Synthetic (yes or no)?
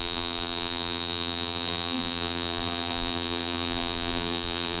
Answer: yes